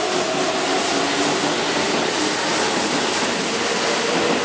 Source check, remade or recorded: recorded